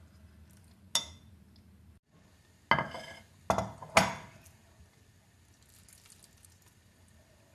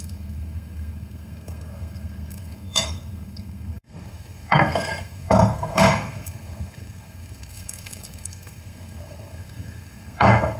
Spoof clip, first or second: second